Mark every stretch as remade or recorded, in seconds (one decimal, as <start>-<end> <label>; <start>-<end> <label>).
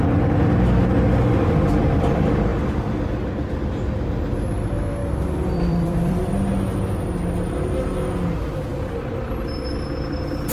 0.0-5.0 recorded; 5.0-6.4 remade; 6.4-10.5 recorded